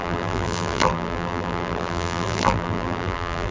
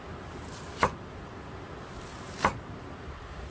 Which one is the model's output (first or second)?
first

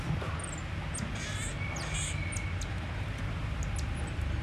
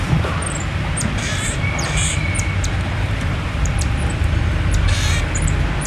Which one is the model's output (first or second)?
second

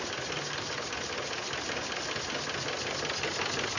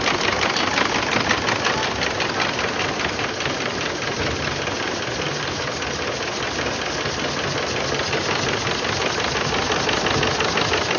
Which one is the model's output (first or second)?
second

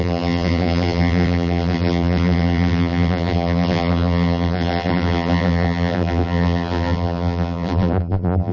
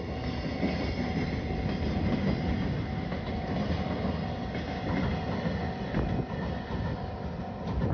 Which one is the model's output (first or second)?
first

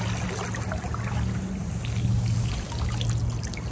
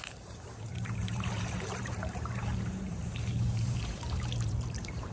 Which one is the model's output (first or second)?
second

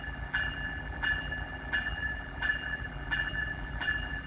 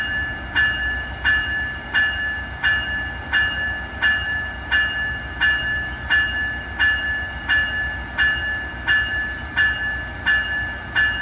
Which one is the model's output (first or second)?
first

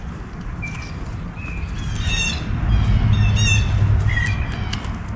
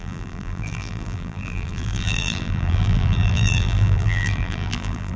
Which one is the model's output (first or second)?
second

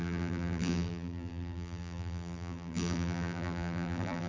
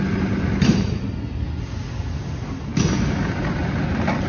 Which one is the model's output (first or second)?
first